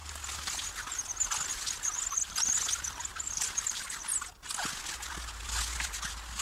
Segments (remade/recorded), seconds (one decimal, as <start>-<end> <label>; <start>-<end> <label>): 0.0-3.1 recorded; 3.1-3.8 remade; 3.8-6.4 recorded